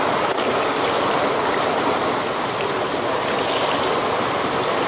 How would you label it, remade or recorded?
recorded